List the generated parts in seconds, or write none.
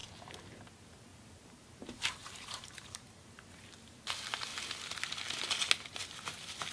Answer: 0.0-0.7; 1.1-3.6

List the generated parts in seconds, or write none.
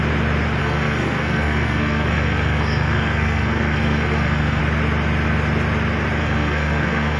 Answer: 0.6-4.6; 6.2-7.2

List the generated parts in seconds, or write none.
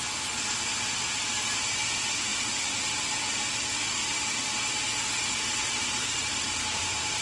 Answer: 0.0-4.0; 5.3-7.2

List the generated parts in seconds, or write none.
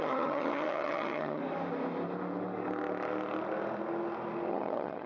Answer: 0.0-1.4; 4.5-5.1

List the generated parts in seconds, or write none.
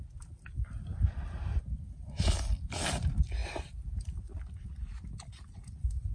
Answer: none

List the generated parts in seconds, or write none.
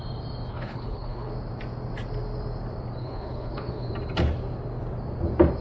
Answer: 0.5-1.3; 3.0-3.9